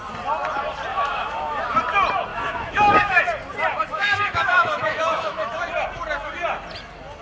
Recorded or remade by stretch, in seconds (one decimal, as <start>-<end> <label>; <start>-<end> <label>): 0.0-0.9 recorded; 0.9-1.6 remade; 1.6-2.3 recorded; 2.3-3.2 remade; 3.2-3.9 recorded; 3.9-5.6 remade; 5.6-7.2 recorded

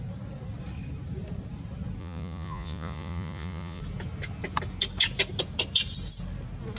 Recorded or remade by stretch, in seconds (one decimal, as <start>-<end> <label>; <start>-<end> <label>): 0.0-2.0 recorded; 2.0-3.8 remade; 3.8-6.8 recorded

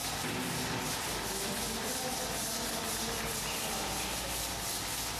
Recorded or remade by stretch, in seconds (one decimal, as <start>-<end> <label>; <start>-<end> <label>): 0.0-5.2 recorded